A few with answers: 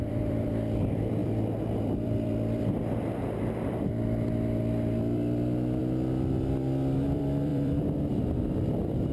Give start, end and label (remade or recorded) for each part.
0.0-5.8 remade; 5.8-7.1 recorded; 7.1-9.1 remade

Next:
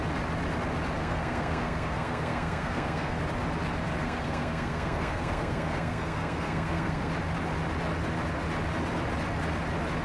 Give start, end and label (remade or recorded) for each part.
0.0-1.0 recorded; 1.0-3.2 remade; 3.2-4.0 recorded; 4.0-7.1 remade; 7.1-10.0 recorded

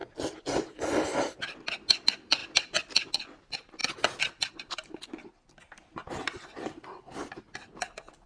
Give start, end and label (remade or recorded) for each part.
0.0-8.3 recorded

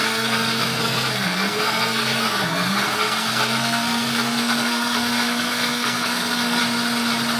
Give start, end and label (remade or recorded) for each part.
0.0-6.6 remade; 6.6-7.4 recorded

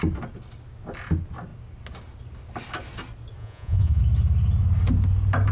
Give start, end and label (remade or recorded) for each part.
0.0-3.4 recorded; 3.4-4.0 remade; 4.0-5.5 recorded

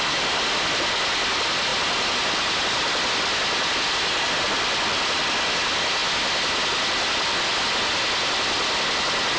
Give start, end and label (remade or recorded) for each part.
0.0-9.4 recorded

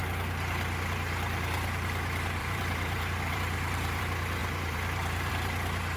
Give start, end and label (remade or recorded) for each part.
0.0-2.4 recorded; 2.4-4.0 remade; 4.0-4.4 recorded; 4.4-5.3 remade; 5.3-6.0 recorded